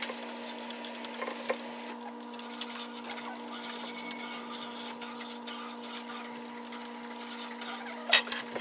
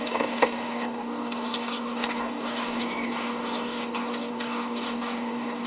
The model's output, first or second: second